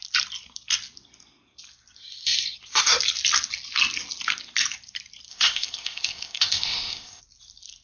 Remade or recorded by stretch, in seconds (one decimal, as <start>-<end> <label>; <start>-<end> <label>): 0.0-5.3 recorded; 5.3-7.2 remade; 7.2-7.8 recorded